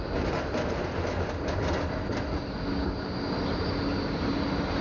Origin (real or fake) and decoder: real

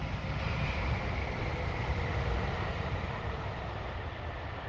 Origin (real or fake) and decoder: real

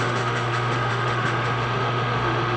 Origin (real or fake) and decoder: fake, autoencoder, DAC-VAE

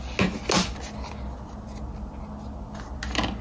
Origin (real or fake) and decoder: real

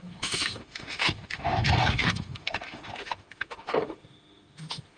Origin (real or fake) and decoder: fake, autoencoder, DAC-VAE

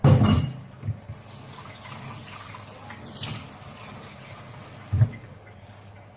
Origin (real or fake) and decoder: real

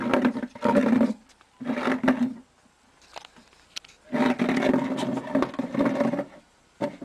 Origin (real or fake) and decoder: real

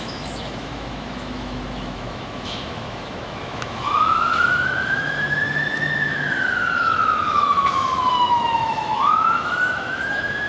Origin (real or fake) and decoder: fake, autoencoder, DAC-VAE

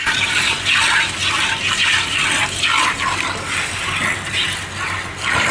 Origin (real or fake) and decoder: real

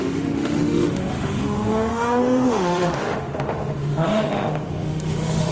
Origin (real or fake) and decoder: fake, autoencoder, DAC-VAE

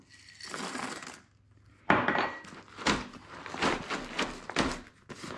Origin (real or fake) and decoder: real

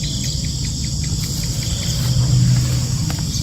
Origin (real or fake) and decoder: real